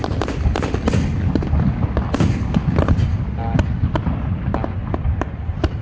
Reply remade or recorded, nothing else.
recorded